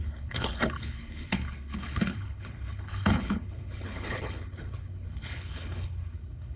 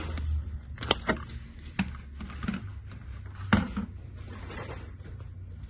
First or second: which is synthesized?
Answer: first